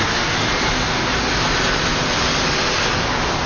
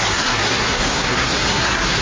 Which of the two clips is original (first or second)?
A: first